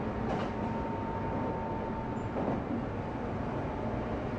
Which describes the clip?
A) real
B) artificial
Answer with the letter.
A